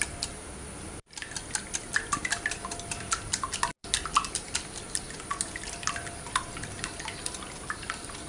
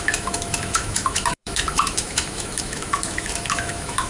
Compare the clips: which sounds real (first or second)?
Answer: first